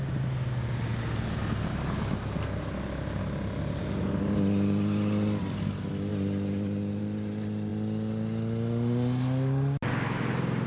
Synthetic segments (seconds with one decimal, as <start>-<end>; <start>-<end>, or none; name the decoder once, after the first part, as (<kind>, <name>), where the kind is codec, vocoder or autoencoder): none